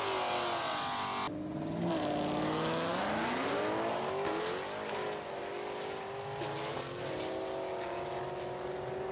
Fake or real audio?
real